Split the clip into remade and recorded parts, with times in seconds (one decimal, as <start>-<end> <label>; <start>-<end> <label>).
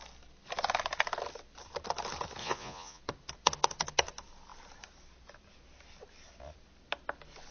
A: 0.0-2.4 recorded; 2.4-3.0 remade; 3.0-7.5 recorded